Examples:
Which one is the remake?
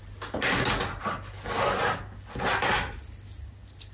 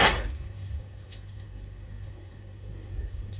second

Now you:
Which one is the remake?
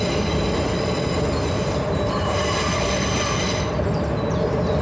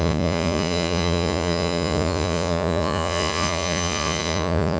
second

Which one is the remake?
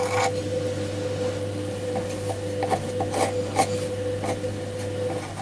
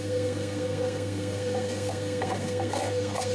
second